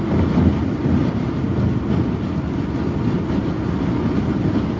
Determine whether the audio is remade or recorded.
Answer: recorded